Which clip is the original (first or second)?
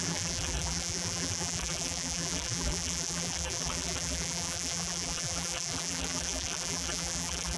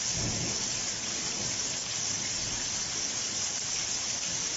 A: second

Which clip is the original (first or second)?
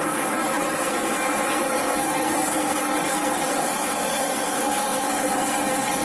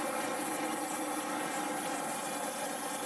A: second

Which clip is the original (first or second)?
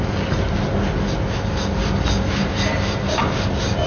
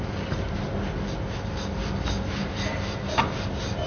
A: first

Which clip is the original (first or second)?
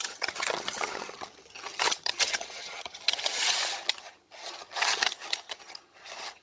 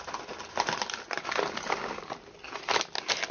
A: second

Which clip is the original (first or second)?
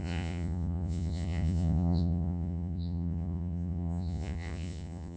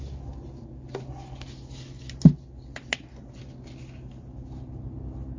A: second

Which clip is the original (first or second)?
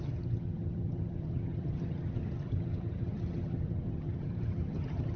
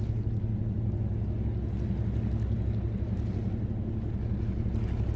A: second